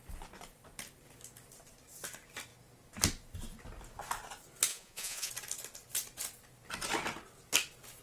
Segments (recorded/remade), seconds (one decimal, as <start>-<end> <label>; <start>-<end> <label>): 0.0-4.7 recorded; 4.7-5.3 remade; 5.3-8.0 recorded